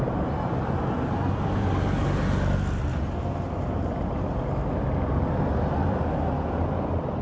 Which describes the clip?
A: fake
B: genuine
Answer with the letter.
B